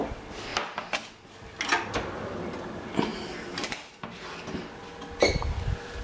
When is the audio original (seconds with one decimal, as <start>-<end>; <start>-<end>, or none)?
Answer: 0.0-6.0

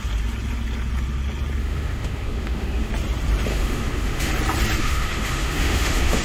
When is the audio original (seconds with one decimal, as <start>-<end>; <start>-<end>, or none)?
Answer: 0.0-1.6; 2.9-3.5; 4.3-4.8

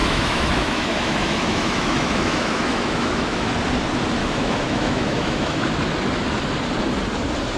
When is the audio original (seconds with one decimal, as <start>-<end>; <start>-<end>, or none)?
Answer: 3.5-4.2; 5.7-7.6

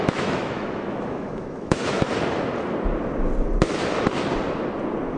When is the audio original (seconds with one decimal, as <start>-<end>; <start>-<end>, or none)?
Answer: 2.1-5.2

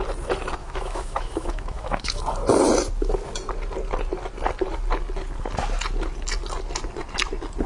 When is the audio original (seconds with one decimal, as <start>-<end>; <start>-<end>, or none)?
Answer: 0.0-0.6; 2.2-7.7

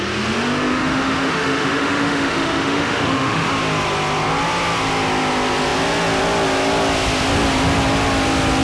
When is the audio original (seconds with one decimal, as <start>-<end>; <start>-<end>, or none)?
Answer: 0.0-0.7; 3.5-8.6